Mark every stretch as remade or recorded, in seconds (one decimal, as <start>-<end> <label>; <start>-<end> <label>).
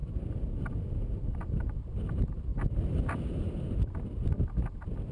0.0-5.1 recorded